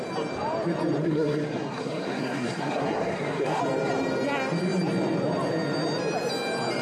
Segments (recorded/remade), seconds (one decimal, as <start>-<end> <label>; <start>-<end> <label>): 0.0-1.0 recorded; 1.0-3.6 remade; 3.6-6.8 recorded